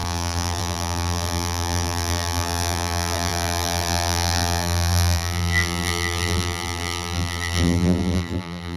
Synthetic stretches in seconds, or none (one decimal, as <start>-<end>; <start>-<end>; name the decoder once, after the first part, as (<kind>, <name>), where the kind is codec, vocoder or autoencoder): 0.0-8.8 (vocoder, BigVGAN v2)